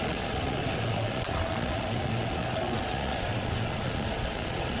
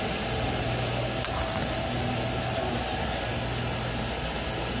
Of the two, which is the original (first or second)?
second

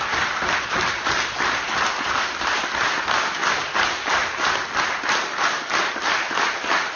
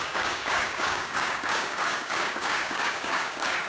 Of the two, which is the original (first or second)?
first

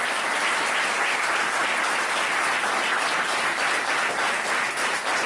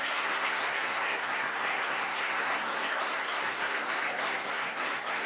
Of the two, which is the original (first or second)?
first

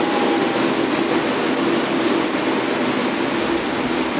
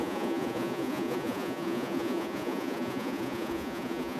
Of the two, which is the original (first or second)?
first